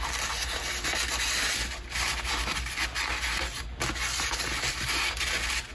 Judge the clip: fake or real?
real